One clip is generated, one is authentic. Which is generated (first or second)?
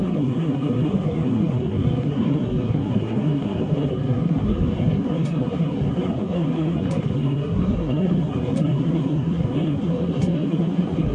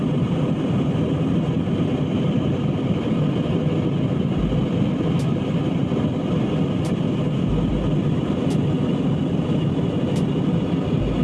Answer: first